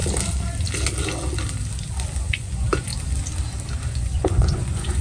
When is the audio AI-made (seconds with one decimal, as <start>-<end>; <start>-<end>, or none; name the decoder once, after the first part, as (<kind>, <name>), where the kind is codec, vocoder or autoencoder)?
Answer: 2.2-2.9 (vocoder, Vocos); 3.9-5.0